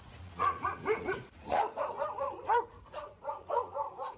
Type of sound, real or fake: fake